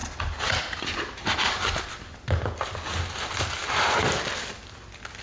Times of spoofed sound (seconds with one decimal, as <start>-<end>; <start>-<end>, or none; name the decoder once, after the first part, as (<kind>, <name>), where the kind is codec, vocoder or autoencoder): none

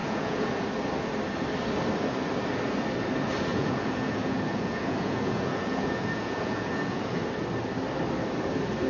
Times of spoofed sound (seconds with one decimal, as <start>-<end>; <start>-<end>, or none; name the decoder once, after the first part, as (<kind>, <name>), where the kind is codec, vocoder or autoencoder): 0.0-0.5 (vocoder, Vocos); 3.5-7.2